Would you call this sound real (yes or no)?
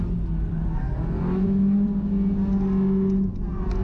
yes